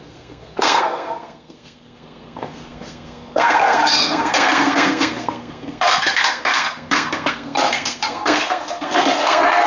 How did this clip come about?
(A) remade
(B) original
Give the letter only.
A